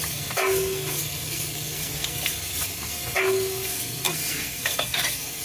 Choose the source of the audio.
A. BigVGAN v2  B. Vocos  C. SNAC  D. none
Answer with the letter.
C